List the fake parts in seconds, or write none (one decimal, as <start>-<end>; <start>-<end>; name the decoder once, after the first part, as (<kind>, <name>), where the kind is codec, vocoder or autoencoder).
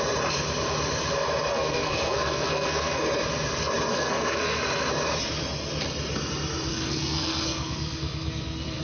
1.5-3.0 (codec, SNAC); 3.9-4.6; 6.7-8.8